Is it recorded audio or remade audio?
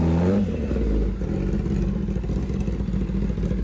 recorded